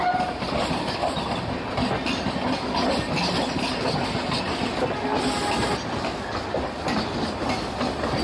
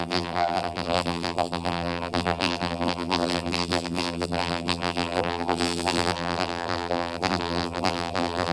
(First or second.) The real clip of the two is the first